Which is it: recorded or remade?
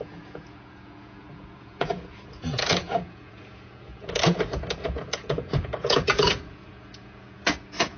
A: remade